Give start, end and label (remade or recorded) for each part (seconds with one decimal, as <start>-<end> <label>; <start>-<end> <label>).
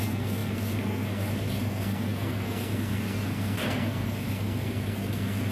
0.0-5.5 remade